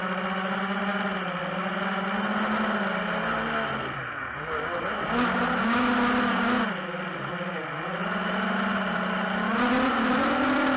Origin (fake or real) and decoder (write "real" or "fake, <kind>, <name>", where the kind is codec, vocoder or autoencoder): real